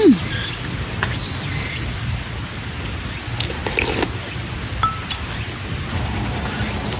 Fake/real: real